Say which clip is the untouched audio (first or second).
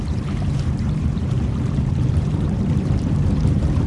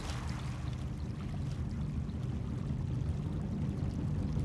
second